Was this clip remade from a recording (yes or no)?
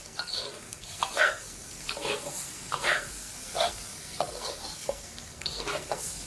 yes